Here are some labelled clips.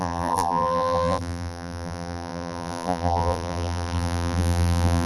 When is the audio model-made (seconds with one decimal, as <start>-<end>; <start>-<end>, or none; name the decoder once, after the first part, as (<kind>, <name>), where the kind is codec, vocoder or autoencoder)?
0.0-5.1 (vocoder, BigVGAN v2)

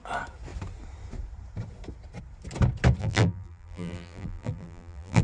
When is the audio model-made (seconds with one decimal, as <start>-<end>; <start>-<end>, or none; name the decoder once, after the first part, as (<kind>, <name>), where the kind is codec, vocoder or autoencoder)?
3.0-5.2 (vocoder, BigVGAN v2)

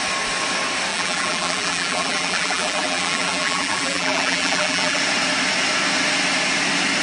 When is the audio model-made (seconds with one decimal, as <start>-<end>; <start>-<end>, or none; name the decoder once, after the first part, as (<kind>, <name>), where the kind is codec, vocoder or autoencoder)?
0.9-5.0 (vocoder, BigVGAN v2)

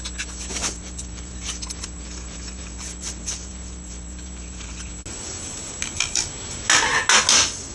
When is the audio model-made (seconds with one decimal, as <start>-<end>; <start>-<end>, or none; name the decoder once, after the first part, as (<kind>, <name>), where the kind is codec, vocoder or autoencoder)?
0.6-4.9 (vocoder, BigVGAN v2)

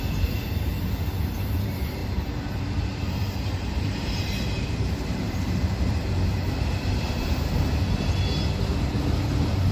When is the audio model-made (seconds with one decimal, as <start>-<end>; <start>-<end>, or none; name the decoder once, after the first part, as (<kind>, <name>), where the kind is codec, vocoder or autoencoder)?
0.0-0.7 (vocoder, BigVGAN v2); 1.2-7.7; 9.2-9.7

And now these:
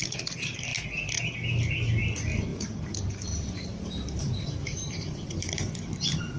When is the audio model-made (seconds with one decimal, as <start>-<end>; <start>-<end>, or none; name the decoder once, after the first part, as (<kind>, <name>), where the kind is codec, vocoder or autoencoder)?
2.5-6.4 (vocoder, BigVGAN v2)

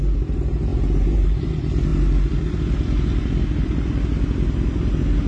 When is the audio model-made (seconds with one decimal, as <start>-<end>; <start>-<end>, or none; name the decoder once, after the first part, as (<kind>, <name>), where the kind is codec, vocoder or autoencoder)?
0.7-1.4 (vocoder, BigVGAN v2)